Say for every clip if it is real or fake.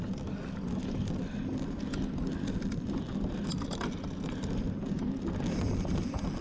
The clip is real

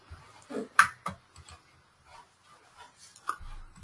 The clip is real